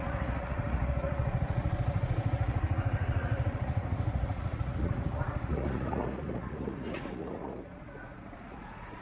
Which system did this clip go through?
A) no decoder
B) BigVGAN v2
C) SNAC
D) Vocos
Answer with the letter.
D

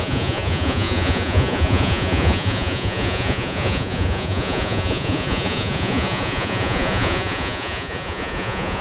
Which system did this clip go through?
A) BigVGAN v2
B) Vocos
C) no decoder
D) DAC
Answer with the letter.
B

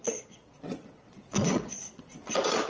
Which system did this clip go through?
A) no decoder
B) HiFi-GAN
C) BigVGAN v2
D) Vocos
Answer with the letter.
D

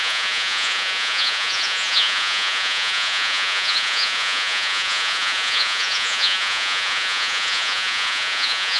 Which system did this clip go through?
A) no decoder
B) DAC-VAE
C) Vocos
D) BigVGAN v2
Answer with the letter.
C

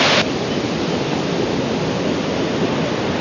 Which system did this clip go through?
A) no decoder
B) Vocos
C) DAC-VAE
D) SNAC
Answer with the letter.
A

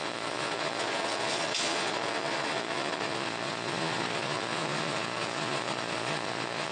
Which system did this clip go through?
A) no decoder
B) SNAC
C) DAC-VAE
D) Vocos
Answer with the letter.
D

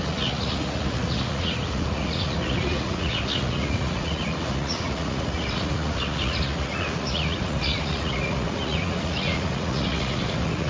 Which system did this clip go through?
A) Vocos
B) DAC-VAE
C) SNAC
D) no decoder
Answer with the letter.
A